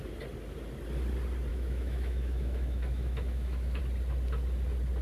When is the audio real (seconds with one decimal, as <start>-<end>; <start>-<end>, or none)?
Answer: 0.0-1.5; 3.8-5.0